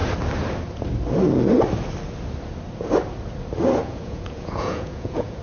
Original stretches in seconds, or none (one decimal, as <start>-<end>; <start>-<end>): 0.0-3.8